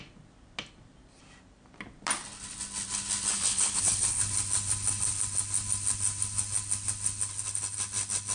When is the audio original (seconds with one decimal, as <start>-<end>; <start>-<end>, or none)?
0.0-3.3; 4.2-8.3